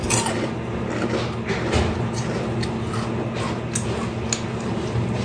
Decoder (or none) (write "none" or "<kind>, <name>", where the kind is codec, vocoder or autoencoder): none